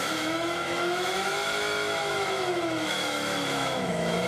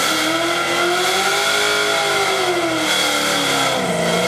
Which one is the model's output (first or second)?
first